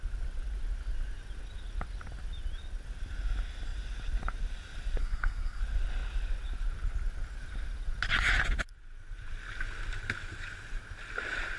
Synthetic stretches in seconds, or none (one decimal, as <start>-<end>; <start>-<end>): 5.0-5.6